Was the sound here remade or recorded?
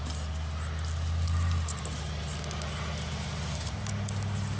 recorded